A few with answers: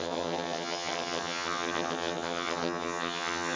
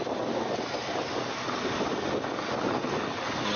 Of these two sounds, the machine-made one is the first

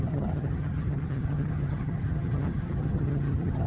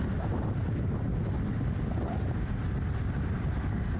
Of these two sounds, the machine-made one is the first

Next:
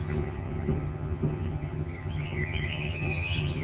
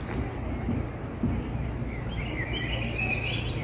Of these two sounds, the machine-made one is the first